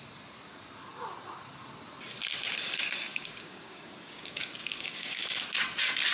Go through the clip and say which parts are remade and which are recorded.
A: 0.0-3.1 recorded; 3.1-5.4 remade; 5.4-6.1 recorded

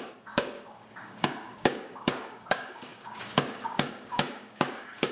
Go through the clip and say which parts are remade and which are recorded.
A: 0.0-5.1 remade